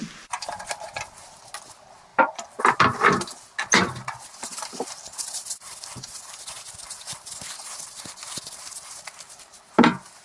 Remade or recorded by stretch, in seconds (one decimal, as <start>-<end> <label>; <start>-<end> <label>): 0.0-2.1 recorded; 2.1-2.6 remade; 2.6-4.5 recorded; 4.5-6.3 remade; 6.3-10.2 recorded

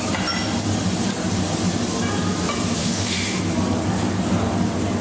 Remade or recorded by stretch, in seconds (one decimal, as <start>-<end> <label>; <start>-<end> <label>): 0.0-2.8 recorded; 2.8-3.4 remade; 3.4-5.0 recorded